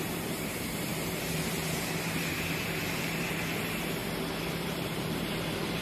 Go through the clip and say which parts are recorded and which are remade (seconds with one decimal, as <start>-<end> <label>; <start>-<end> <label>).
0.0-4.0 remade; 4.0-4.5 recorded; 4.5-5.8 remade